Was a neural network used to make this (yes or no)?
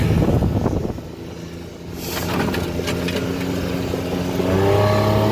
no